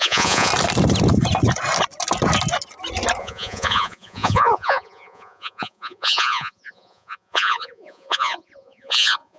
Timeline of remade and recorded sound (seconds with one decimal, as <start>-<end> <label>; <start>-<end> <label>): 0.0-0.5 remade; 0.5-3.2 recorded; 3.2-9.4 remade